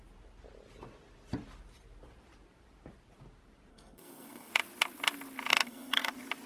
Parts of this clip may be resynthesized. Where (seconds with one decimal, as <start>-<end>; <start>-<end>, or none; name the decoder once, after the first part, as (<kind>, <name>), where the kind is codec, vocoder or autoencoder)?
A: 3.7-4.5 (codec, SNAC); 5.5-6.1